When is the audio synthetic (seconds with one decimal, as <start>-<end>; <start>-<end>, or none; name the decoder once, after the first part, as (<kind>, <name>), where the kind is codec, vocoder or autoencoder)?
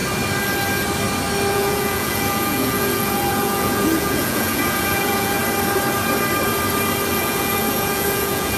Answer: 1.5-5.4 (vocoder, Vocos); 7.1-8.6